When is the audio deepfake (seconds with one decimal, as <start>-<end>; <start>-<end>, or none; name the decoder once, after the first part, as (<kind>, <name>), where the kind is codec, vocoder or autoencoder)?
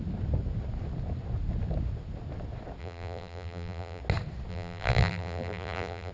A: 2.8-4.0 (vocoder, BigVGAN v2); 4.5-6.1